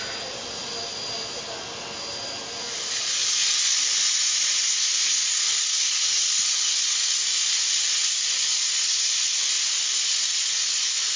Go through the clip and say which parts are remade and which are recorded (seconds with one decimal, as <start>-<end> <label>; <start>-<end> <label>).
0.0-11.2 recorded